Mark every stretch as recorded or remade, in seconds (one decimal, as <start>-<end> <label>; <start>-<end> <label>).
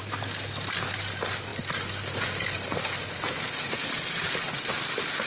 0.0-5.3 recorded